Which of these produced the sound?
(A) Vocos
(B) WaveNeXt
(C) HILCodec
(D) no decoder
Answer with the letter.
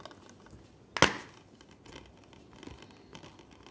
D